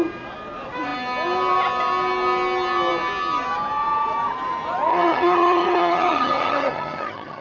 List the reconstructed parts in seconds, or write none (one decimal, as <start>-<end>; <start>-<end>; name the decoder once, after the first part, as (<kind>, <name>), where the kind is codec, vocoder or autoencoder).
4.9-7.4 (vocoder, HiFi-GAN)